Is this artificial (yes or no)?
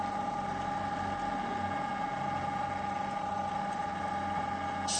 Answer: no